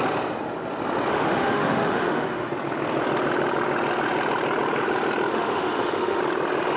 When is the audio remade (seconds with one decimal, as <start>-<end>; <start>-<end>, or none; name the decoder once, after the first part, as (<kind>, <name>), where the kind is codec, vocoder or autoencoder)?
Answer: 1.1-2.5 (autoencoder, DAC-VAE); 5.3-6.2